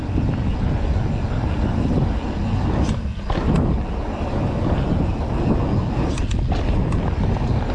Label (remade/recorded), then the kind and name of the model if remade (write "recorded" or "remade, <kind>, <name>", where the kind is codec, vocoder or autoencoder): recorded